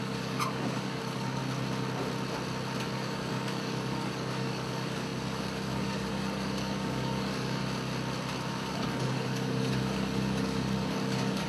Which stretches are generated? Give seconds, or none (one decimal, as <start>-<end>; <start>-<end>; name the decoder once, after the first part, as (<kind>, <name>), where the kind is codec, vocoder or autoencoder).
0.0-1.4 (codec, DAC); 2.8-7.6; 8.5-11.5